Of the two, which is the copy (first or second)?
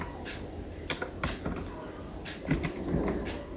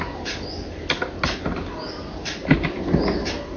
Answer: first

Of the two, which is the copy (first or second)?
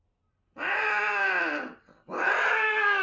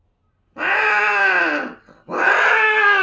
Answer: first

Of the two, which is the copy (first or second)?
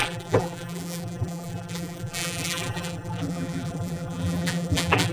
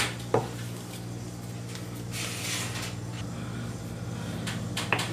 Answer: first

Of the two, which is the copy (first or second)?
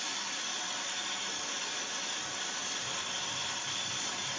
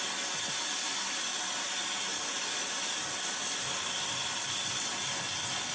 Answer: first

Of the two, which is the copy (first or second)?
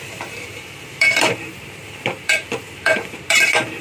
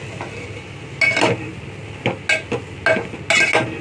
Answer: first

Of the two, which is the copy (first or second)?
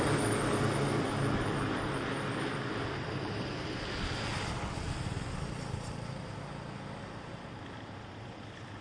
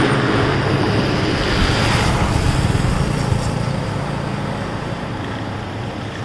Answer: first